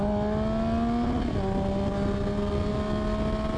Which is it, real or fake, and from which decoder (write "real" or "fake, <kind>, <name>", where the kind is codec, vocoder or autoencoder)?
real